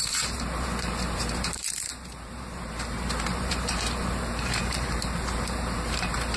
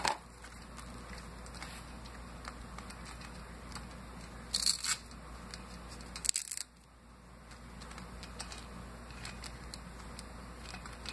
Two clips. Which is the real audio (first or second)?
second